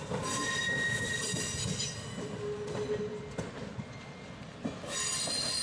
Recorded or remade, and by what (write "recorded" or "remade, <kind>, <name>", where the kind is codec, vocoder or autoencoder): recorded